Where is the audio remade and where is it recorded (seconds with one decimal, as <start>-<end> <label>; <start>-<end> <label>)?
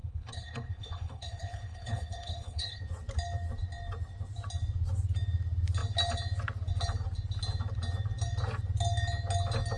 0.0-2.8 remade; 2.8-9.8 recorded